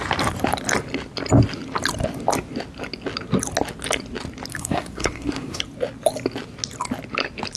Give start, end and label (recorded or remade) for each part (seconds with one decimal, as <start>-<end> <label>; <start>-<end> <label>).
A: 0.0-4.5 recorded; 4.5-5.6 remade; 5.6-7.6 recorded